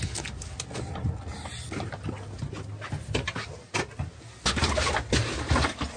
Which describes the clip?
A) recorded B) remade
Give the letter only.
A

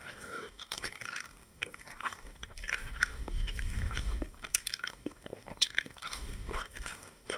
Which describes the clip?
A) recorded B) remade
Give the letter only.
B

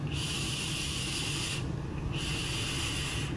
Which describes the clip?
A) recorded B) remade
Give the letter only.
A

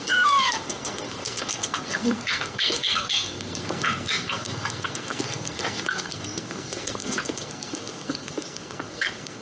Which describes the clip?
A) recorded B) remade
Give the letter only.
B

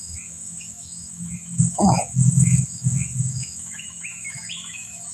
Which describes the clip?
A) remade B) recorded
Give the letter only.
A